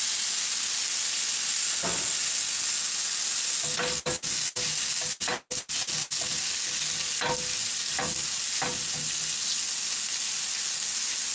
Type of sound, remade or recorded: recorded